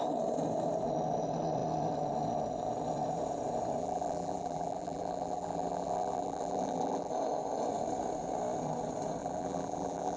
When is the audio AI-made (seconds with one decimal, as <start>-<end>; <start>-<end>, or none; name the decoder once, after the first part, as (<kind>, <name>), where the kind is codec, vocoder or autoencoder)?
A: 3.8-7.1 (vocoder, BigVGAN v2); 9.2-10.2